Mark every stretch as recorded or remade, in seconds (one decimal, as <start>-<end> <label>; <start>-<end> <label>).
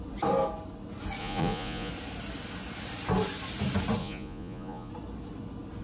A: 0.0-1.2 recorded; 1.2-1.9 remade; 1.9-4.0 recorded; 4.0-4.9 remade; 4.9-5.8 recorded